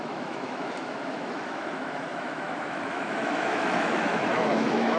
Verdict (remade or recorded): remade